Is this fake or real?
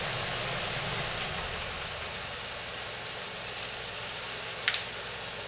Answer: real